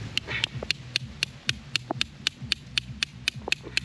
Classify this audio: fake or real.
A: real